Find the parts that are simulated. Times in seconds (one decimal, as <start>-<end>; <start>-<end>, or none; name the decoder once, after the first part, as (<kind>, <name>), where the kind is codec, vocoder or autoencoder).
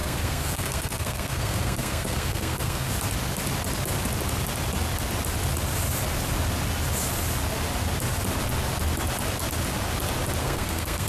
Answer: 0.0-2.9 (codec, SNAC); 10.4-11.1